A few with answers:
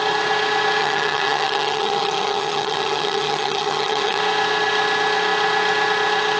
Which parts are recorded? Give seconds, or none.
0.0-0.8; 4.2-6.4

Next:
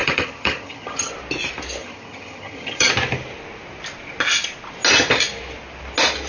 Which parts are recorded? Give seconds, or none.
1.1-1.8; 2.9-6.3